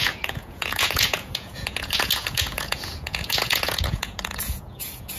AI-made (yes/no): yes